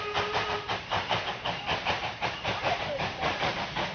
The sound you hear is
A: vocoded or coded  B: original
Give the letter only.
A